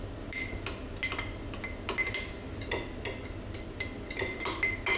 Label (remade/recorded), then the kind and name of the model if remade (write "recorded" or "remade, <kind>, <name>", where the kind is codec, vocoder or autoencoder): recorded